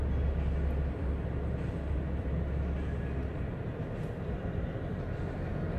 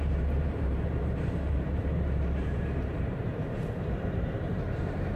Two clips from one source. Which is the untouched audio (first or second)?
first